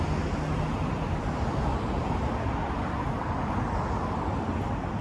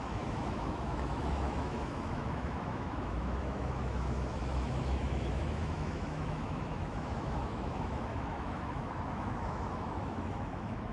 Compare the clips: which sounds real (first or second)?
first